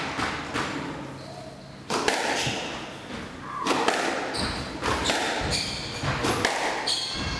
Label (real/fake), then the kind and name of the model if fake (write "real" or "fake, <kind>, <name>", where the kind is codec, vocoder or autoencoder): real